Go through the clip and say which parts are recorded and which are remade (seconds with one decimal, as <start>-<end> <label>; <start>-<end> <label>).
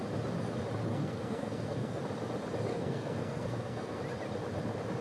0.0-0.9 recorded; 0.9-2.0 remade; 2.0-2.7 recorded; 2.7-4.0 remade; 4.0-5.0 recorded